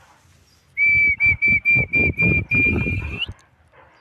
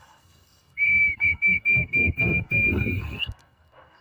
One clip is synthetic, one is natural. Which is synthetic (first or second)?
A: second